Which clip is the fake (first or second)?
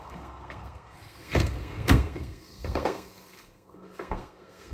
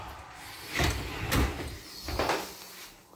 first